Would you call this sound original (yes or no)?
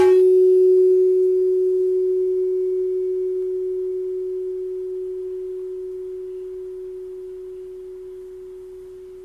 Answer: yes